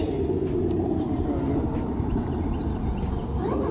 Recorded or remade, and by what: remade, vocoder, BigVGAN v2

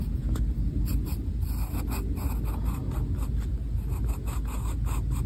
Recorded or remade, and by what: recorded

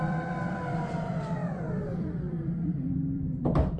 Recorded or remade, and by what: remade, vocoder, BigVGAN v2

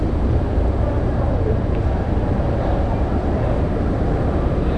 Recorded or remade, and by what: remade, vocoder, BigVGAN v2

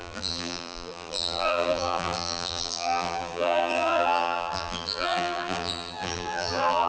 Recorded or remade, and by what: remade, vocoder, BigVGAN v2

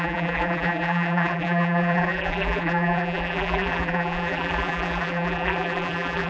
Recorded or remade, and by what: remade, vocoder, BigVGAN v2